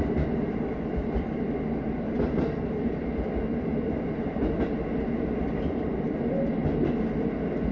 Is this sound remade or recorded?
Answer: recorded